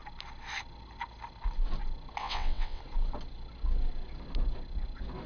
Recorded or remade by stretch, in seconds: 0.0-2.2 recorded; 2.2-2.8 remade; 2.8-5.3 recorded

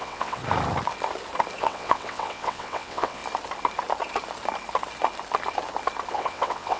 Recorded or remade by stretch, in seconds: 0.0-0.4 remade; 0.4-1.6 recorded; 1.6-3.2 remade; 3.2-6.1 recorded; 6.1-6.8 remade

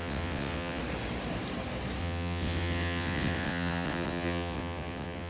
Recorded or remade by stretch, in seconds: 0.0-0.8 remade; 0.8-2.0 recorded; 2.0-5.3 remade

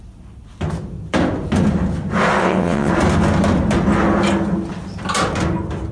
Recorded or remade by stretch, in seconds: 0.0-2.4 recorded; 2.4-2.9 remade; 2.9-5.9 recorded

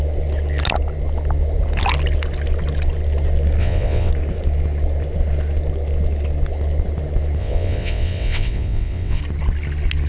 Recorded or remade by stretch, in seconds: 0.0-3.6 recorded; 3.6-4.1 remade; 4.1-7.4 recorded; 7.4-9.2 remade; 9.2-10.1 recorded